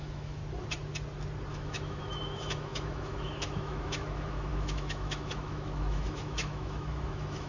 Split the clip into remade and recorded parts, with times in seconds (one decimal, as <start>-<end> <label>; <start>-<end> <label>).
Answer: 0.0-0.4 remade; 0.4-1.5 recorded; 1.5-7.5 remade

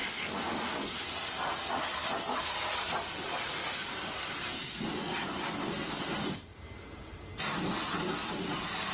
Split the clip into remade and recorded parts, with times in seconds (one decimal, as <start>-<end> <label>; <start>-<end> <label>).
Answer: 0.0-8.9 recorded

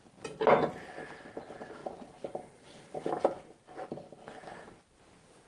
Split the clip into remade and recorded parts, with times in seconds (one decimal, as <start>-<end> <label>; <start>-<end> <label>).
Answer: 0.0-1.8 recorded; 1.8-3.1 remade; 3.1-5.5 recorded

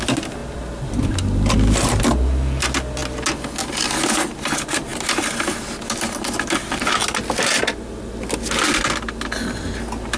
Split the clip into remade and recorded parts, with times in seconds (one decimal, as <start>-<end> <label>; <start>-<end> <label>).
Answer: 0.0-0.4 recorded; 0.4-2.0 remade; 2.0-10.2 recorded

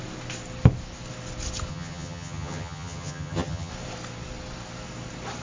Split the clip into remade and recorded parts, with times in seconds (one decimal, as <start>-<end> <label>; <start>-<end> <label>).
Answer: 0.0-1.7 recorded; 1.7-3.7 remade; 3.7-5.4 recorded